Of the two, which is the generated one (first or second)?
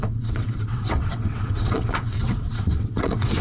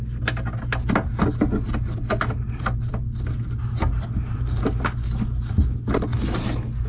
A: first